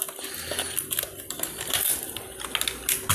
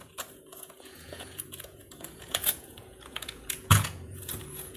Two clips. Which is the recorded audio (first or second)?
first